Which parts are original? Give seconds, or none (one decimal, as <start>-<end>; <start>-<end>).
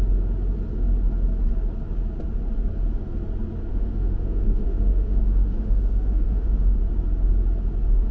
0.0-3.7; 6.8-8.1